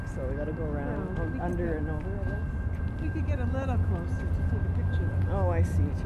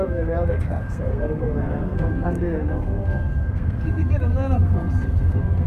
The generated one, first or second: second